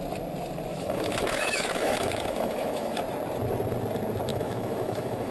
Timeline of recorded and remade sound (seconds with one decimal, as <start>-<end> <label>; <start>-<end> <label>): 0.0-0.7 recorded; 0.7-3.0 remade; 3.0-4.3 recorded; 4.3-5.3 remade